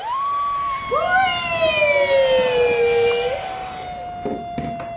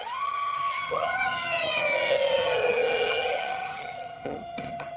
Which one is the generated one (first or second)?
second